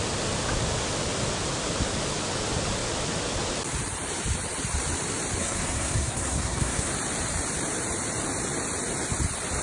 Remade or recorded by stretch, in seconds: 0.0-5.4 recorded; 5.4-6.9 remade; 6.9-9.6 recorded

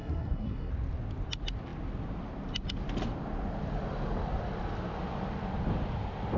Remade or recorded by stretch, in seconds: 0.0-0.7 remade; 0.7-6.4 recorded

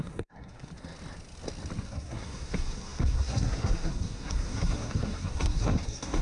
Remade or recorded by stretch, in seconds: 0.0-0.7 remade; 0.7-1.8 recorded; 1.8-6.2 remade

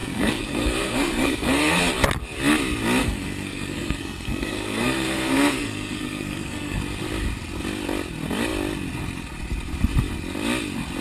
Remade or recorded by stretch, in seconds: 0.0-1.8 remade; 1.8-3.0 recorded; 3.0-6.8 remade; 6.8-11.0 recorded

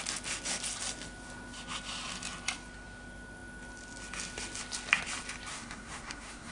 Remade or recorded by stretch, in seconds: 0.0-5.5 recorded; 5.5-6.5 remade